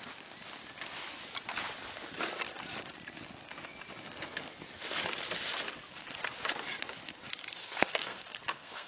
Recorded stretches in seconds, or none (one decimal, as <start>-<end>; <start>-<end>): 0.0-7.6